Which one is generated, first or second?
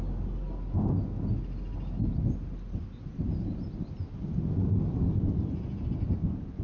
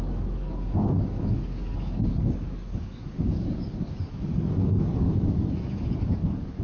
second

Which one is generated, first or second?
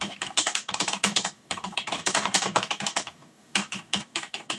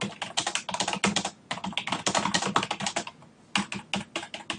first